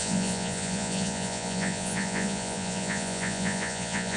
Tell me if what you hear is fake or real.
fake